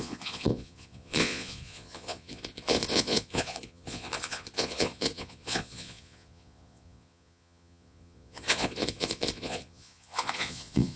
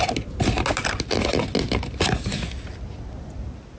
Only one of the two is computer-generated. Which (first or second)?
first